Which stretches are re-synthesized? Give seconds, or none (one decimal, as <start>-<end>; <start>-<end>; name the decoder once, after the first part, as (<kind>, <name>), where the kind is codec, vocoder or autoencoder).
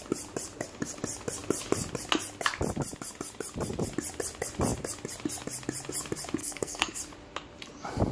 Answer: 6.4-7.0 (codec, SNAC)